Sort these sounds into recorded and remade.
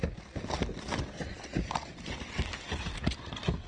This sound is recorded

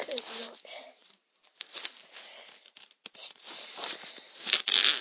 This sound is remade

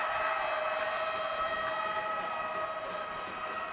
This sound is recorded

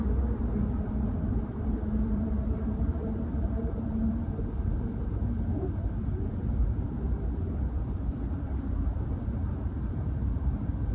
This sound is remade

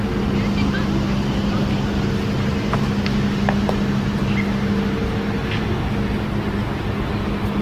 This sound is recorded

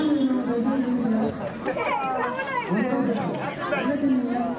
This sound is recorded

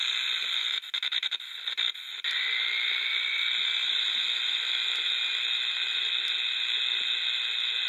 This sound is recorded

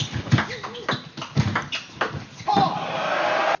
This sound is recorded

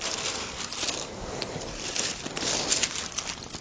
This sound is recorded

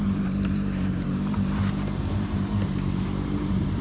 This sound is remade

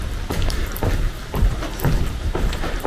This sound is remade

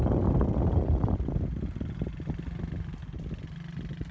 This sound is recorded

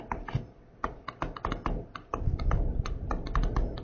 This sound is remade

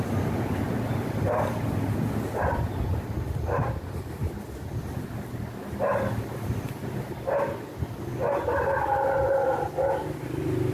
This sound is recorded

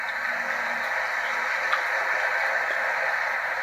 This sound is recorded